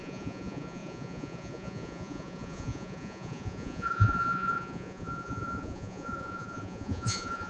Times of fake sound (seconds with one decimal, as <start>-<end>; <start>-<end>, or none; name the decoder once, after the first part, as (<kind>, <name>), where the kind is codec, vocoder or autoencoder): 0.0-7.5 (vocoder, Vocos)